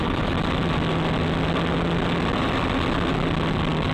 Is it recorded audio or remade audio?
recorded